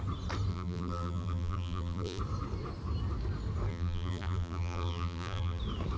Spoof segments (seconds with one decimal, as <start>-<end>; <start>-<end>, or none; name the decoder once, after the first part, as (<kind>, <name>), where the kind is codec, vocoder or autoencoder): 0.5-2.2 (vocoder, BigVGAN v2); 3.7-5.6